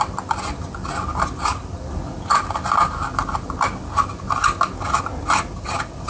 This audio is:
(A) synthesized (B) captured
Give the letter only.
B